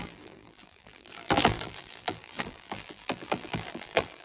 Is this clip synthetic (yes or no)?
yes